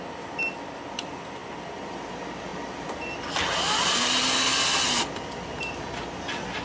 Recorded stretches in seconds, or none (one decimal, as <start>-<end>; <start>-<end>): 0.0-6.6